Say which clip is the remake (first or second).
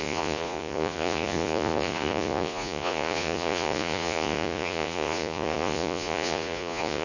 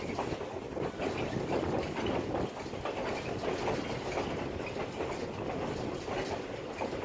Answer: first